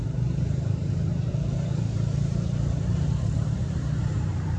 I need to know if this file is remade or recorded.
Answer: remade